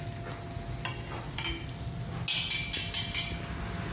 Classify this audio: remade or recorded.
recorded